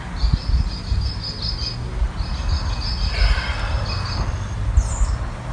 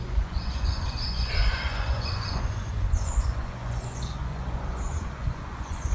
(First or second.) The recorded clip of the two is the first